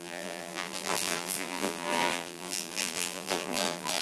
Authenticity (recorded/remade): remade